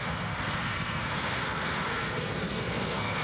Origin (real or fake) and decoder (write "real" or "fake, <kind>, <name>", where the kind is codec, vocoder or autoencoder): fake, codec, SNAC